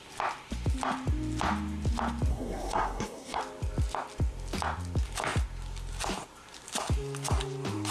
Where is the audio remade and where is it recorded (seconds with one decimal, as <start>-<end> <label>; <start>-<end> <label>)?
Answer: 0.0-2.3 recorded; 2.3-3.4 remade; 3.4-7.9 recorded